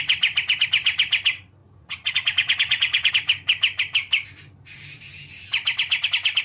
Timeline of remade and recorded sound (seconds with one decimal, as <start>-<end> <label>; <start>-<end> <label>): 0.0-1.6 recorded; 1.6-3.1 remade; 3.1-6.4 recorded